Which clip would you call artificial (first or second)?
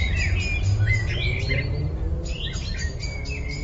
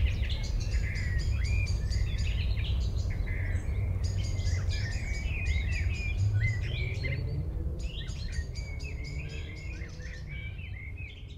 second